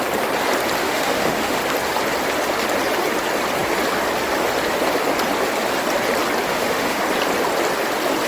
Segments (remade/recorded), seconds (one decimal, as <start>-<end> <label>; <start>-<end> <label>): 0.0-0.8 recorded; 0.8-1.6 remade; 1.6-6.5 recorded; 6.5-7.0 remade; 7.0-8.3 recorded